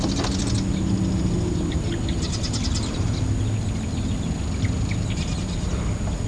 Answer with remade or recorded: recorded